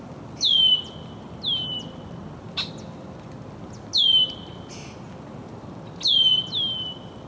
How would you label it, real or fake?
real